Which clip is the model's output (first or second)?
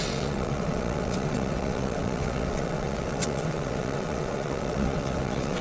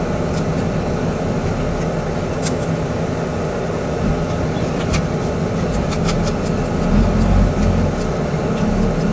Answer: first